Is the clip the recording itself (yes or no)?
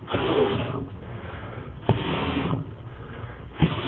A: no